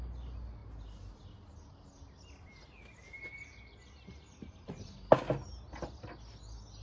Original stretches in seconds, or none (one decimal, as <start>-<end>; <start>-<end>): 0.0-6.8

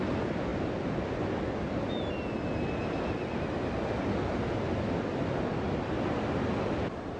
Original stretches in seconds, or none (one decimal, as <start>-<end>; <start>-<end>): 0.0-7.2

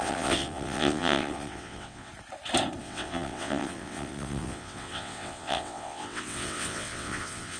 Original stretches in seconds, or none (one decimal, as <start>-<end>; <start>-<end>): 2.1-2.8

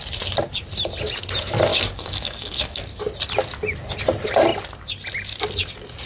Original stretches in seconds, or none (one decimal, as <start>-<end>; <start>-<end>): 0.0-1.7; 2.8-6.1

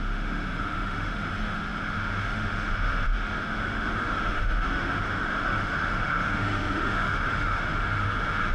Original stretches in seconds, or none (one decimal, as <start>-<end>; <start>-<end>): none